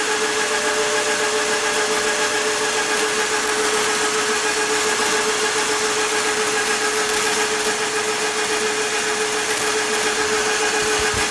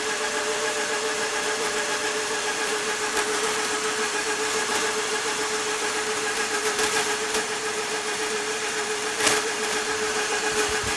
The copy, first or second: second